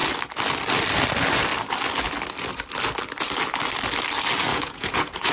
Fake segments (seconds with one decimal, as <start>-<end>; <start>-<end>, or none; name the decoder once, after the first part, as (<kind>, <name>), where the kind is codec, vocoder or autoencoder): 4.5-5.3 (vocoder, Vocos)